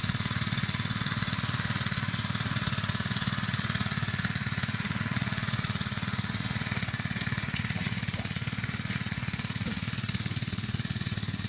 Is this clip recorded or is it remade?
remade